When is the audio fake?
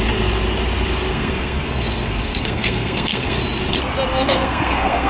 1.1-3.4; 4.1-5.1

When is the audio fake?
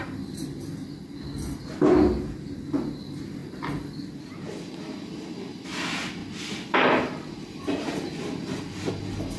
none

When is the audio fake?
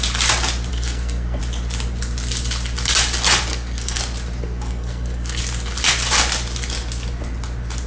0.7-1.4; 3.5-4.0; 4.4-5.4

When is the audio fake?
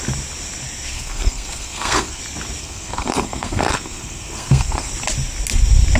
0.9-2.2; 2.6-4.9